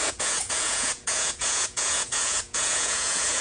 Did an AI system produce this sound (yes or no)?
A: yes